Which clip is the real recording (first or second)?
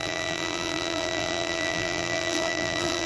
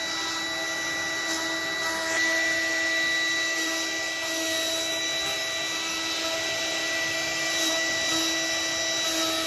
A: second